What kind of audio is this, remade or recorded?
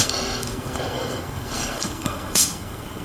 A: remade